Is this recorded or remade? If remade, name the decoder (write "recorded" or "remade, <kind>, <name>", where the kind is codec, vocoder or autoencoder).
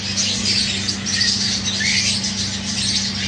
recorded